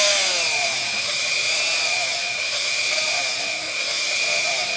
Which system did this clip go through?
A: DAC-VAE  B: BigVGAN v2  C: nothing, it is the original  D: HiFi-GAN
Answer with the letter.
B